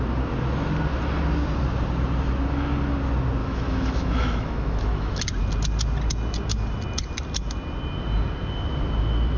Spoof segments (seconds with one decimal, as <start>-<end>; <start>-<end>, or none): 3.4-5.2